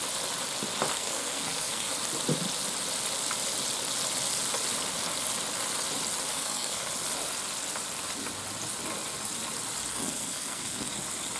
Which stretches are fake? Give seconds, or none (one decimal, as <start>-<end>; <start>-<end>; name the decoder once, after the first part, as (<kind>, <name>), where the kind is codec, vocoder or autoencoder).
0.9-1.9 (codec, SNAC); 6.3-6.9; 9.9-10.9